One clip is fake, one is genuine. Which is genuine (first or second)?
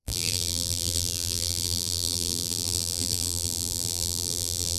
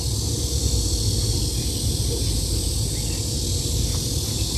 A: second